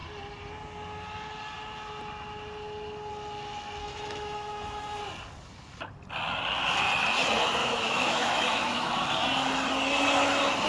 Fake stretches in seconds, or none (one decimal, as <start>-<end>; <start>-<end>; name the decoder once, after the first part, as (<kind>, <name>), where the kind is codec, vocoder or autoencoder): 3.8-5.0 (autoencoder, DAC-VAE); 7.6-8.9